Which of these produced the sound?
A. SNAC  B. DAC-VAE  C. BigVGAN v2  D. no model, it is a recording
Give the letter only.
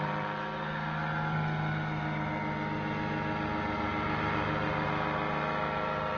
D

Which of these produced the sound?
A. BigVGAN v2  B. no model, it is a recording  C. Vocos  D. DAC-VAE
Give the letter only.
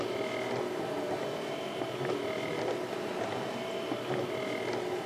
B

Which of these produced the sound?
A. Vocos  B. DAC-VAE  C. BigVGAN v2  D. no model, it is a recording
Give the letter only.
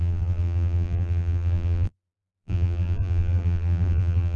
C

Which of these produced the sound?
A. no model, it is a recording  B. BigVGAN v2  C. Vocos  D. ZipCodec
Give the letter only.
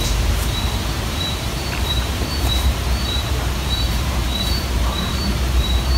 B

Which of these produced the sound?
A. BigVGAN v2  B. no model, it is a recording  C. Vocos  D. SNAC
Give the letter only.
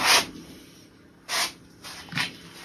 B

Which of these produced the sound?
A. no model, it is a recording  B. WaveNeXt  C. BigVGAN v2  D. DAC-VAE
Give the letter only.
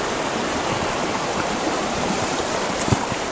C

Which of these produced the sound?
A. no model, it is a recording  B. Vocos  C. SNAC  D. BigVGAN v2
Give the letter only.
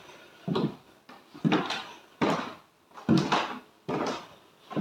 A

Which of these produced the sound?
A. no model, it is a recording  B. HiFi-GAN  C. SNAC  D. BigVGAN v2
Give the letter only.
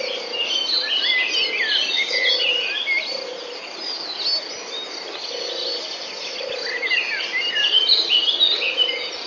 A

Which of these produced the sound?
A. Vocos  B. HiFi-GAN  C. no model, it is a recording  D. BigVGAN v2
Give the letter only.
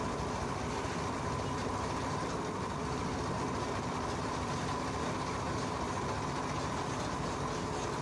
C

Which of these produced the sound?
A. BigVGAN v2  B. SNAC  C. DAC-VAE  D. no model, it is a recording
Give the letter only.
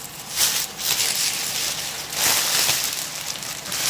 D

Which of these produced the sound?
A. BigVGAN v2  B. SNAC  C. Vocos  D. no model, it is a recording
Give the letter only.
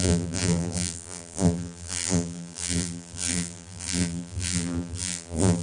A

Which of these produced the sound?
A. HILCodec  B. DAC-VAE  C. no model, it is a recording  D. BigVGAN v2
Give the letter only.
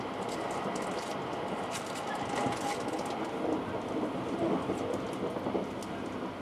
C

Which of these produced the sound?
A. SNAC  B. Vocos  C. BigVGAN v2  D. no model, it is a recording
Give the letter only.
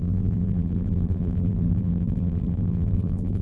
C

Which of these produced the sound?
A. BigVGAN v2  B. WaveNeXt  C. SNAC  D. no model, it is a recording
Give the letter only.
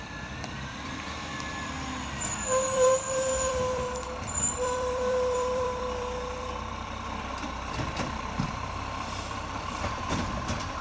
A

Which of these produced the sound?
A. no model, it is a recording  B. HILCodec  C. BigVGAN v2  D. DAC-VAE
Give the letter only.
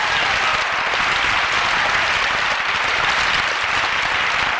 A